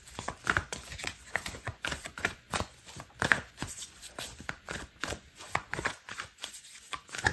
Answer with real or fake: fake